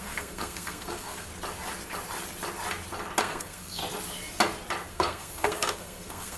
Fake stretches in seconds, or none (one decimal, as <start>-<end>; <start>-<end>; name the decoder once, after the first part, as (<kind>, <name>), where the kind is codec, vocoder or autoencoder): 0.0-1.3 (codec, SNAC); 3.2-3.8; 4.9-6.4